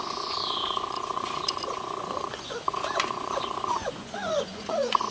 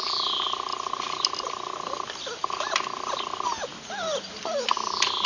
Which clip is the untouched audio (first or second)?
second